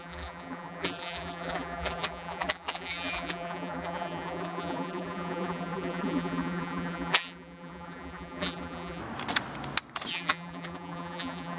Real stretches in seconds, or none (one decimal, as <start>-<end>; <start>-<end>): 9.0-10.1